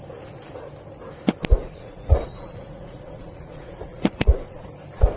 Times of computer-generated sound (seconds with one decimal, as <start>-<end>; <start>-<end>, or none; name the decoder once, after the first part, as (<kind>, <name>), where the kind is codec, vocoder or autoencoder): 1.6-4.7 (vocoder, Vocos)